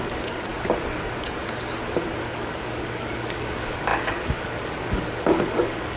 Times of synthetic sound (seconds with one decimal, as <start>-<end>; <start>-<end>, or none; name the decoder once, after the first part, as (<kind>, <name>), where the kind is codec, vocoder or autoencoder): 0.0-0.5 (codec, DAC); 2.2-6.0